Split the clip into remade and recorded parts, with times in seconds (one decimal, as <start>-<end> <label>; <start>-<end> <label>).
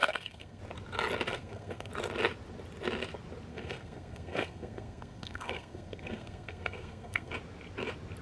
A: 0.0-0.6 remade; 0.6-1.3 recorded; 1.3-1.9 remade; 1.9-3.5 recorded; 3.5-7.3 remade; 7.3-8.2 recorded